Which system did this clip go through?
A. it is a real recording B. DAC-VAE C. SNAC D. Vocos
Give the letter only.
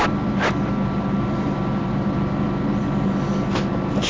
A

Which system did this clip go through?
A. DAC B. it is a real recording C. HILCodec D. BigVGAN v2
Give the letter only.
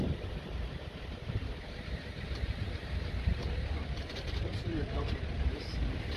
D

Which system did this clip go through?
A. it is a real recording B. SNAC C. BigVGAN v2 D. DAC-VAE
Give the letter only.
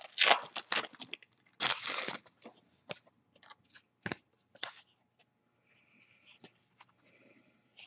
A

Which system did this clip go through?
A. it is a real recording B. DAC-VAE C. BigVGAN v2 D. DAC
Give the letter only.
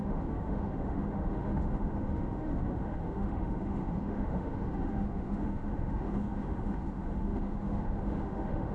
B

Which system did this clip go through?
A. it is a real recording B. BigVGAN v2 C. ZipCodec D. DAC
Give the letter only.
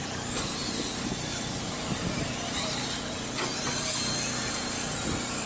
A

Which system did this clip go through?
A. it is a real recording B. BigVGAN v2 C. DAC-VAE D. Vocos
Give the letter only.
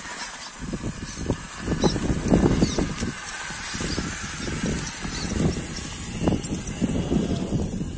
A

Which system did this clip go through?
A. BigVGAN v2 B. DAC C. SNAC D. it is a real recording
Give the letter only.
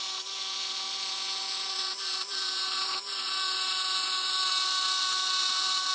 D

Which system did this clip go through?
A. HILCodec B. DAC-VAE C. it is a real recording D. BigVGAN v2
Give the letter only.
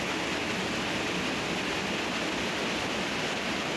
C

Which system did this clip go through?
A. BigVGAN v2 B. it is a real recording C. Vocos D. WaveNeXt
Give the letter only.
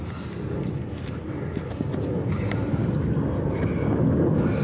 B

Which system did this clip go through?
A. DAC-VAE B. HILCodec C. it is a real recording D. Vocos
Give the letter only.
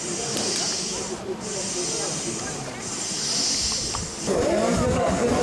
C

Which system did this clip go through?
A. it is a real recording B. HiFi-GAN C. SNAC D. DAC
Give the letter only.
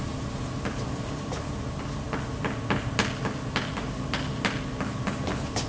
A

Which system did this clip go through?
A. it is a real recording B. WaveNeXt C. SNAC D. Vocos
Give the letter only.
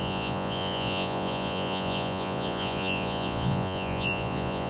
D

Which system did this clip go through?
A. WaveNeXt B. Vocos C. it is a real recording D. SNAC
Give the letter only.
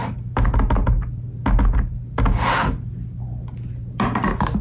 C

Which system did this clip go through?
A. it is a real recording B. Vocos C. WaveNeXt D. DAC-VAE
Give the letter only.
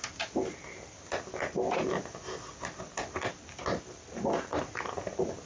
A